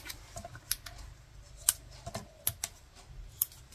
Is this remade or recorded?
recorded